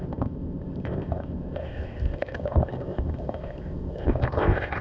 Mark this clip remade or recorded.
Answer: remade